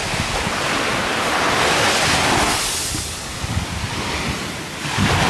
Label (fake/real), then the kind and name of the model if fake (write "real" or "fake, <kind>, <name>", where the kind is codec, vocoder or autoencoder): real